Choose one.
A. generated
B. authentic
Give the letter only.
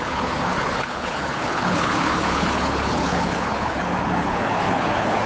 A